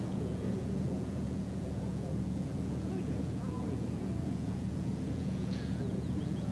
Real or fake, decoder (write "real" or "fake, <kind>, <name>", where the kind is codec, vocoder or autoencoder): fake, vocoder, Vocos